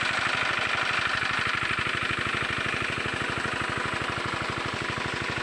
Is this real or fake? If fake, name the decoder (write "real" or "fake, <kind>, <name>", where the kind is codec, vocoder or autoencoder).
real